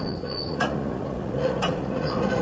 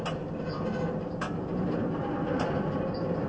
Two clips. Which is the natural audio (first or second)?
second